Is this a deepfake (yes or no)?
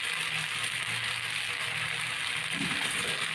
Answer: no